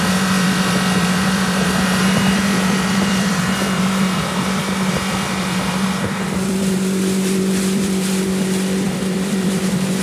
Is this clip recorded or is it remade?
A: remade